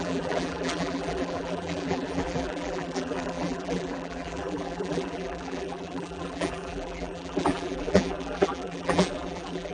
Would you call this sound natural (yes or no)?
no